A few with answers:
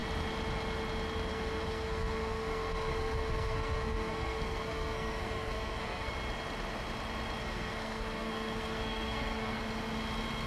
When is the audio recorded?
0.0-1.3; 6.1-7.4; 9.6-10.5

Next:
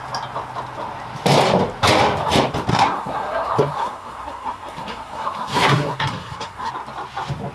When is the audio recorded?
0.0-2.7; 6.7-7.5

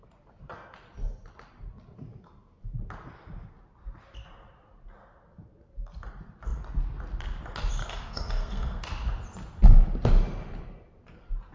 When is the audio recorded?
0.0-7.8; 8.8-11.5

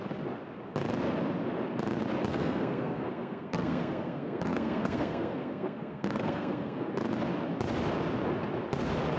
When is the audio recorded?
0.0-2.3; 6.9-9.2

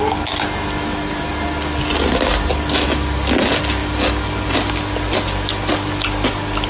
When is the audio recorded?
0.0-6.7

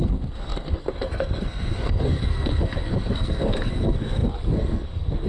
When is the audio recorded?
none

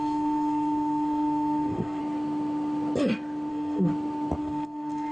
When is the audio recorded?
2.0-3.5; 3.9-4.4